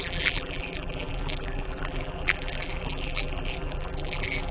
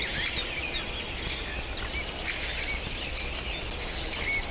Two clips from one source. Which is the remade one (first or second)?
first